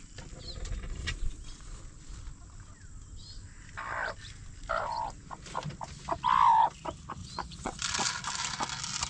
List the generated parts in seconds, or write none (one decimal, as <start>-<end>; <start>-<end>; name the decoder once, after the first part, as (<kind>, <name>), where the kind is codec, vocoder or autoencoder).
1.0-1.8 (vocoder, Vocos); 7.2-7.8